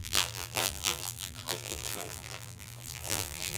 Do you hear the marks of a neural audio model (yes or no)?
yes